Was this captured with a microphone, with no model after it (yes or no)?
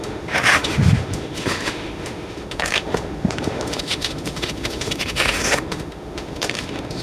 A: no